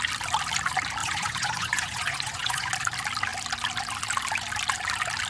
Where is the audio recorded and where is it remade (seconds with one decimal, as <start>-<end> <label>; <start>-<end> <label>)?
0.0-1.0 recorded; 1.0-2.7 remade; 2.7-5.3 recorded